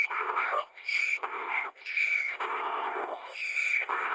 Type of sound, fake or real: fake